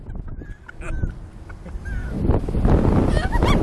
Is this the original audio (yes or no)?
yes